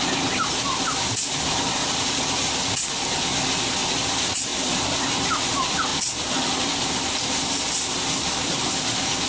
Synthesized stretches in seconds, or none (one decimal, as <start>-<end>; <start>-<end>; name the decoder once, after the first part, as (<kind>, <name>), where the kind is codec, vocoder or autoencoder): 1.8-2.5 (vocoder, Vocos)